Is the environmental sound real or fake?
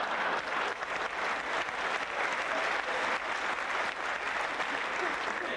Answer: real